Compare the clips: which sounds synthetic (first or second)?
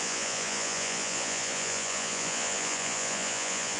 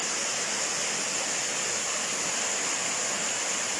first